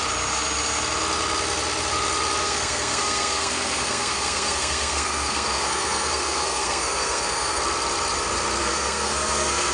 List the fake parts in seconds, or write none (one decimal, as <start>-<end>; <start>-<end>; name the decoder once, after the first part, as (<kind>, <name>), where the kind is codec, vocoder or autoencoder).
2.4-7.6 (codec, SNAC); 8.6-9.7